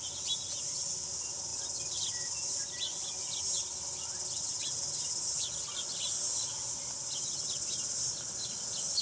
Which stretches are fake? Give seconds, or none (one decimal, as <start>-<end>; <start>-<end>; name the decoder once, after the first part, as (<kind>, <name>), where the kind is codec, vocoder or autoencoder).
none